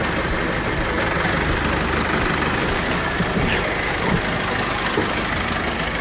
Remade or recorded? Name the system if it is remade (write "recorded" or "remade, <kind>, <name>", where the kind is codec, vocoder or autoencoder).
recorded